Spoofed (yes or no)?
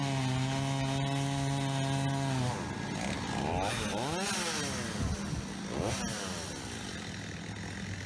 no